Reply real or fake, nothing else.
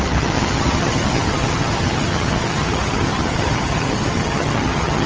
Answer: fake